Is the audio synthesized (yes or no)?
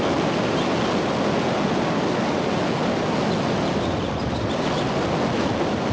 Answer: no